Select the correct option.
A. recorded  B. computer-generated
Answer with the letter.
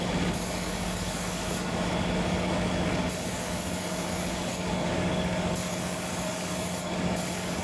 B